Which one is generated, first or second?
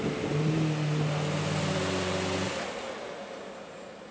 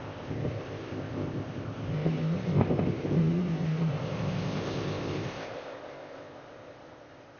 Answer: second